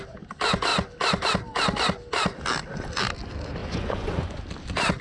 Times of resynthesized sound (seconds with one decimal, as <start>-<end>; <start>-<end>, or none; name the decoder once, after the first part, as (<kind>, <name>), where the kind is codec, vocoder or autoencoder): 3.6-4.4 (vocoder, Vocos)